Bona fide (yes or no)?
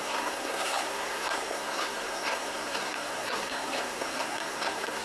no